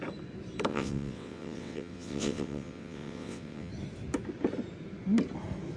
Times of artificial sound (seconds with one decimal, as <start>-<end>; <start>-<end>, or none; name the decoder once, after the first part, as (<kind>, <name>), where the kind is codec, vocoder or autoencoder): 0.7-3.7 (vocoder, WaveNeXt)